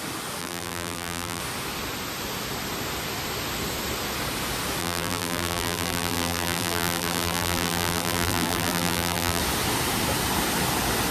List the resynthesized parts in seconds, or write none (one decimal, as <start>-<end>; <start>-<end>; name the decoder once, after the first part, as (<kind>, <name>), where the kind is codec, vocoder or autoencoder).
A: 0.4-1.4 (vocoder, BigVGAN v2); 4.8-9.4